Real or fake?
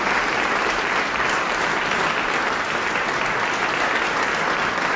real